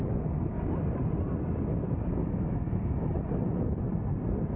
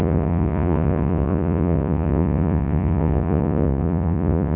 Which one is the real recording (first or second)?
first